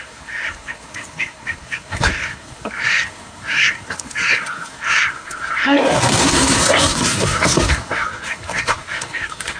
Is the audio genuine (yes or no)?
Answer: no